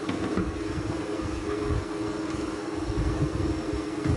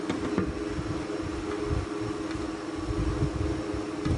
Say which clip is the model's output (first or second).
first